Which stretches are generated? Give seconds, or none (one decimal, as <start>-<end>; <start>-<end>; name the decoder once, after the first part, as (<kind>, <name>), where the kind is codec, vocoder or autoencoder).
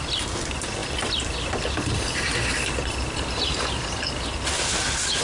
0.8-3.2 (vocoder, BigVGAN v2)